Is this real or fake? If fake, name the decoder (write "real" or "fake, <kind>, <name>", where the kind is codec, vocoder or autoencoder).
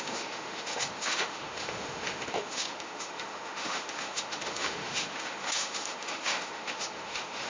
fake, autoencoder, DAC-VAE